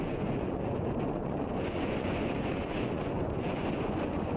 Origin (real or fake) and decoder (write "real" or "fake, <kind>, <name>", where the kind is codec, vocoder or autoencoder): fake, vocoder, Vocos